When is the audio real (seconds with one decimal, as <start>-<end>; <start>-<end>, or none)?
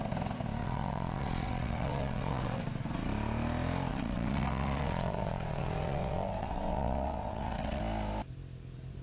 0.0-0.6; 2.6-3.9; 7.8-9.0